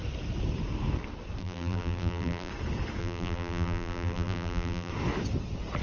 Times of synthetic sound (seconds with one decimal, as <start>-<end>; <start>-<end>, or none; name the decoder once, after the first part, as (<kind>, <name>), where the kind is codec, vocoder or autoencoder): 1.4-2.5 (vocoder, BigVGAN v2); 3.0-4.9